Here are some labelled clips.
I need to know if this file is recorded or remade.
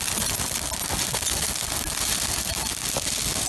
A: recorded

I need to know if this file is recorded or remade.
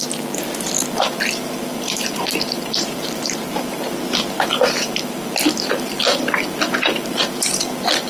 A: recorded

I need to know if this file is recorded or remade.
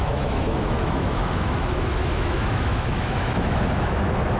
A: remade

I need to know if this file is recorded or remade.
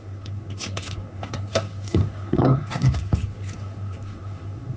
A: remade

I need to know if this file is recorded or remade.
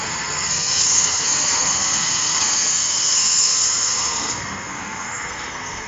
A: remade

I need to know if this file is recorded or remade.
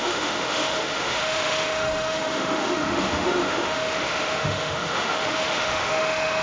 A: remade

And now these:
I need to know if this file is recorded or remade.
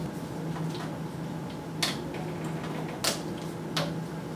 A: recorded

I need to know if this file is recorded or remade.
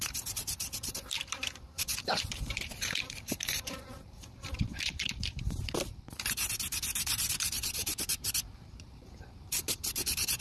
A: remade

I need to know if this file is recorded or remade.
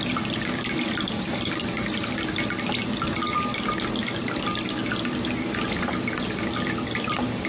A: recorded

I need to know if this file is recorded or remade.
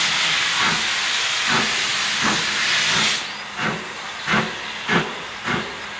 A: recorded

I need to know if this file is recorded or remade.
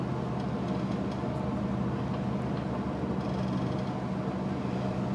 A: recorded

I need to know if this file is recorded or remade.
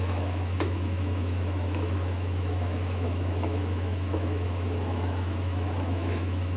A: remade